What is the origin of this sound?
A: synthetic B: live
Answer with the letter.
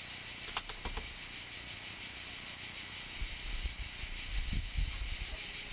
B